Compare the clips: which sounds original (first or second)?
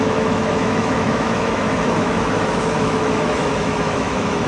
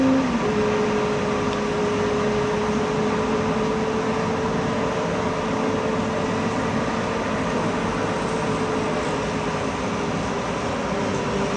second